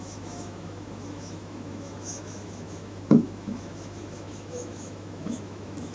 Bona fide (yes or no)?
no